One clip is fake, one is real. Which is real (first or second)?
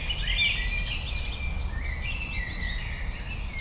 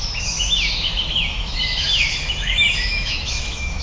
first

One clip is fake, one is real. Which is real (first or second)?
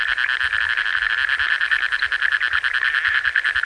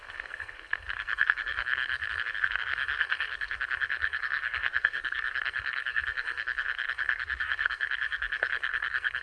first